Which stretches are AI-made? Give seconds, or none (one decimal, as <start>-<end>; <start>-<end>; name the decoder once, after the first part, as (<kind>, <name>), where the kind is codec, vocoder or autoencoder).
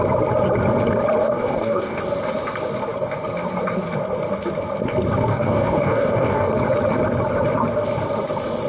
1.2-2.0 (codec, DAC); 5.3-6.5